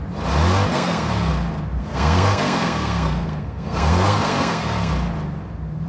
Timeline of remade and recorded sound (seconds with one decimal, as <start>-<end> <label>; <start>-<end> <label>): 0.0-0.7 recorded; 0.7-1.3 remade; 1.3-1.8 recorded; 1.8-4.9 remade; 4.9-5.9 recorded